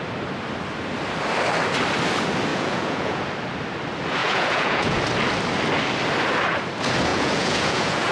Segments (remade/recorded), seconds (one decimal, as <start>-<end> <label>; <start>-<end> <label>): 0.0-2.5 recorded; 2.5-3.2 remade; 3.2-4.2 recorded; 4.2-5.0 remade; 5.0-7.1 recorded; 7.1-8.1 remade